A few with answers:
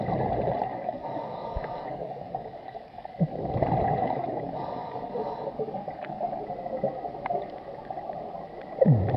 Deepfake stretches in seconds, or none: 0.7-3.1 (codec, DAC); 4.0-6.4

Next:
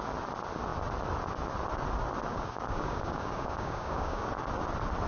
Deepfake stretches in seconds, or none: 2.3-4.3 (codec, DAC)

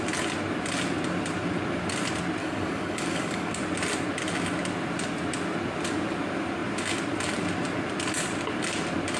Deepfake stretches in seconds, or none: 2.4-3.5 (codec, DAC)

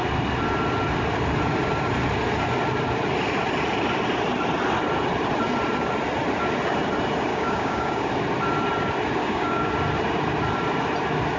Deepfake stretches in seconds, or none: 7.3-8.1 (codec, DAC); 9.2-9.7